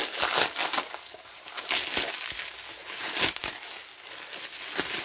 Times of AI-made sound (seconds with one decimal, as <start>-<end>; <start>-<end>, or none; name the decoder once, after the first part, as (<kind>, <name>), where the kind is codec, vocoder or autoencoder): none